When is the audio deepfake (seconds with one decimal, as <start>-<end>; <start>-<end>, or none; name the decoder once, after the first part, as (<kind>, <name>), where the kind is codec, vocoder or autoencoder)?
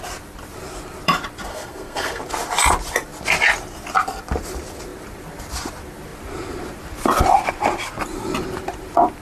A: 1.5-2.2 (codec, SNAC)